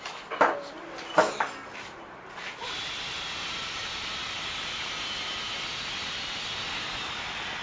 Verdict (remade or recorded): recorded